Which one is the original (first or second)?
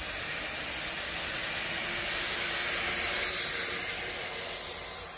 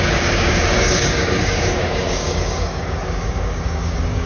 first